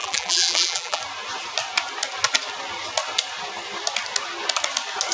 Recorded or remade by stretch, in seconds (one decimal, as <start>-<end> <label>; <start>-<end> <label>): 0.0-1.0 remade; 1.0-5.1 recorded